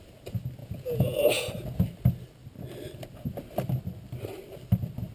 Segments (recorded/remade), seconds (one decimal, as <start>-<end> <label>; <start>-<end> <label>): 0.0-0.6 recorded; 0.6-1.5 remade; 1.5-5.1 recorded